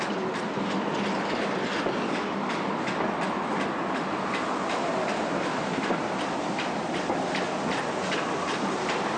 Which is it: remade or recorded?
recorded